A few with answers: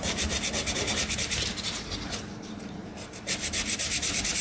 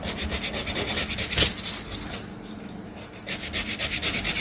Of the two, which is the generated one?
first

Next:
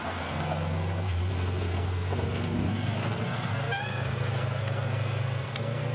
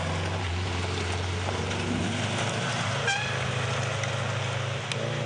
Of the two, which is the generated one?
first